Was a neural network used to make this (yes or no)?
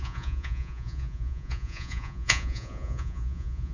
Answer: yes